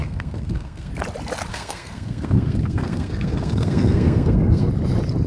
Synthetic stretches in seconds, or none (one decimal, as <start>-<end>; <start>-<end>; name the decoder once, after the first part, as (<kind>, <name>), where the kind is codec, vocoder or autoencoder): 0.0-0.9 (codec, SNAC); 1.5-4.7